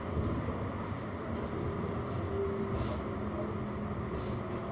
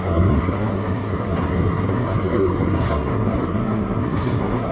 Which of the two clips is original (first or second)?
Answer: first